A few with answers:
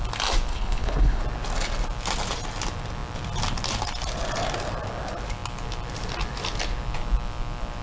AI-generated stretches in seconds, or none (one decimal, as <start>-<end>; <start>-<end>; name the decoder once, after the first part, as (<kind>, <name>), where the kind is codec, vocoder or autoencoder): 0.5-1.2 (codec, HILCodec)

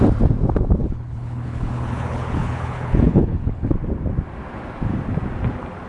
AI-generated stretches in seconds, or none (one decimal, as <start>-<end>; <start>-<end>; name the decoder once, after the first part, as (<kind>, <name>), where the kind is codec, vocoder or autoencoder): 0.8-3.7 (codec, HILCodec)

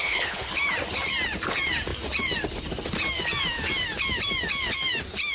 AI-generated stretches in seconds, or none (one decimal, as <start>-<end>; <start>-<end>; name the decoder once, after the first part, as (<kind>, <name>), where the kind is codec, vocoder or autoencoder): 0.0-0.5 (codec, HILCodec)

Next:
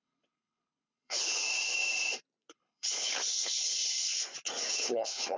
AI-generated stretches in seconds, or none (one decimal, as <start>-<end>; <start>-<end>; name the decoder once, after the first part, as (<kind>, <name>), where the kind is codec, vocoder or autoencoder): 0.0-1.4 (codec, HILCodec); 2.5-4.1; 4.7-5.4